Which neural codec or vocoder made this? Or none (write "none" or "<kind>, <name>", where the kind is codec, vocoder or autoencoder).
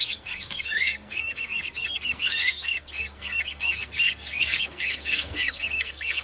codec, SNAC